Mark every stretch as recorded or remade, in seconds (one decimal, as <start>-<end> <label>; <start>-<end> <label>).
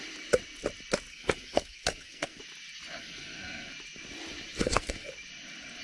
0.0-1.1 recorded; 1.1-2.4 remade; 2.4-3.0 recorded; 3.0-3.7 remade; 3.7-4.6 recorded; 4.6-5.1 remade; 5.1-5.8 recorded